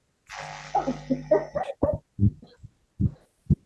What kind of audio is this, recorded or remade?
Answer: recorded